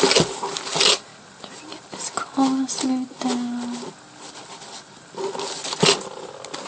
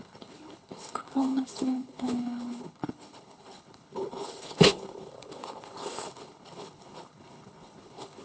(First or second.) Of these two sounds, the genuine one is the first